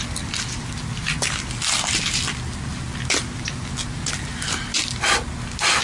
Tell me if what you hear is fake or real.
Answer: real